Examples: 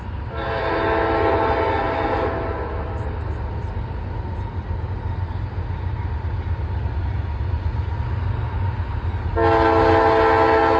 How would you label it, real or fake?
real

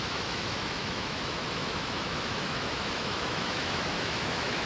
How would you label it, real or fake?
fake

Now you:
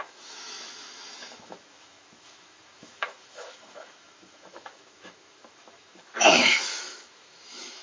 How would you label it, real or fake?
fake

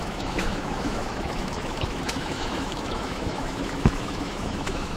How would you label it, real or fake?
fake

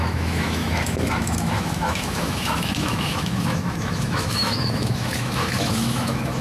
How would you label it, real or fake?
fake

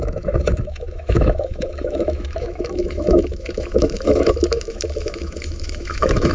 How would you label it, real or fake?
fake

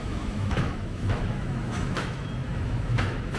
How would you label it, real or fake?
fake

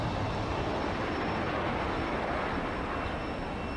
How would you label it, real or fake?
real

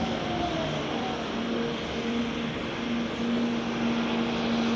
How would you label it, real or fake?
real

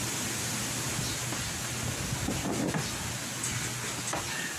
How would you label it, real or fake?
real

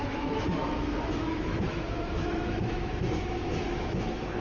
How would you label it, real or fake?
fake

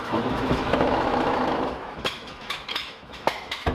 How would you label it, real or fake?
fake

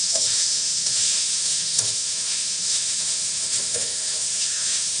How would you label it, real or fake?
fake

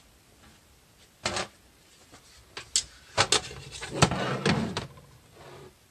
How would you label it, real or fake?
real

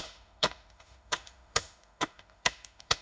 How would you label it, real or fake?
fake